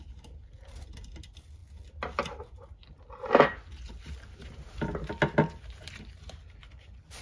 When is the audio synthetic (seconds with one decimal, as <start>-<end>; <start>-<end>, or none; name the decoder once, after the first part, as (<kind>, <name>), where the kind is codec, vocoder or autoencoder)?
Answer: none

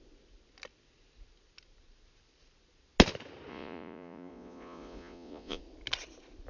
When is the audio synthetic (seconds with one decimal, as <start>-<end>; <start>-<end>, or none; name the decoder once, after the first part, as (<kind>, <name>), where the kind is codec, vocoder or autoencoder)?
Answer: 3.5-5.6 (vocoder, Vocos)

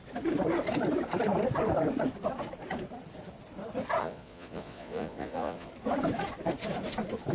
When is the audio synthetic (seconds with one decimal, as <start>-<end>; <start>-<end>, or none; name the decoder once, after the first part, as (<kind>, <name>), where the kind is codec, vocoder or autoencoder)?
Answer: 4.0-5.7 (vocoder, Vocos)

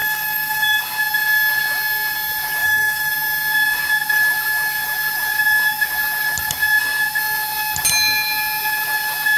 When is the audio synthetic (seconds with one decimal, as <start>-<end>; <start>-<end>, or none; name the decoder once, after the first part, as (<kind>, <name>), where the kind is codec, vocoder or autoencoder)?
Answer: 0.0-0.8 (autoencoder, DAC-VAE); 2.6-3.1

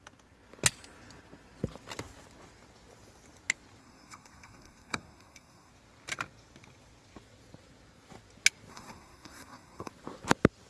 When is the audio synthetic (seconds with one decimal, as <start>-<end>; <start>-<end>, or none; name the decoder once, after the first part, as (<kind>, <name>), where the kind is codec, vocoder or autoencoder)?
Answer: 3.8-5.7 (codec, SNAC); 8.7-9.9

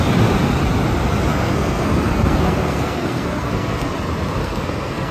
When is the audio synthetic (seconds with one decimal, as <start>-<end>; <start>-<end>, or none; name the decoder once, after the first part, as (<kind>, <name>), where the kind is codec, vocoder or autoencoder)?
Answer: 1.3-3.9 (codec, SNAC); 4.4-5.1

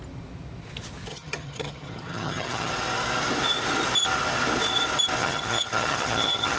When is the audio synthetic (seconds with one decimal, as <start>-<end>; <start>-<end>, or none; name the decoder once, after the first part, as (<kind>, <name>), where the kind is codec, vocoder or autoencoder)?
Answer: 1.1-2.7 (vocoder, HiFi-GAN); 5.2-6.6